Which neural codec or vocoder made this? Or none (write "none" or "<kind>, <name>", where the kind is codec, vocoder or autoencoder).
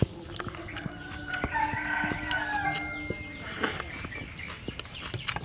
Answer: none